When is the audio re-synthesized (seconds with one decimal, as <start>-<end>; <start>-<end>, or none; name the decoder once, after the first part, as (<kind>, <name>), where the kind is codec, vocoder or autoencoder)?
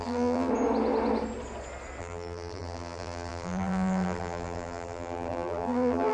0.0-0.5 (vocoder, BigVGAN v2); 2.0-6.1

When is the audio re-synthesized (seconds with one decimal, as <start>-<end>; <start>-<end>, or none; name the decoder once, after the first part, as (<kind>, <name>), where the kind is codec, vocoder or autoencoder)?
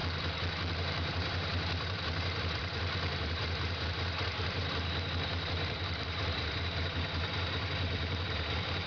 0.7-8.9 (vocoder, BigVGAN v2)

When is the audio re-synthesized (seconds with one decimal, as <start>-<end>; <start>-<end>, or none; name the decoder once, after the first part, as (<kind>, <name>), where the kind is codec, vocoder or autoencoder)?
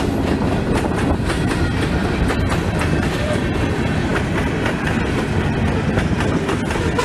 2.0-3.4 (vocoder, BigVGAN v2); 4.1-4.7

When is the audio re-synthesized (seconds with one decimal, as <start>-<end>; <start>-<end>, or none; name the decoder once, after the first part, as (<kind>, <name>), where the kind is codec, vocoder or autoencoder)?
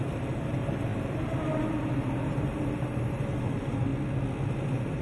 0.0-3.9 (vocoder, BigVGAN v2); 4.5-5.0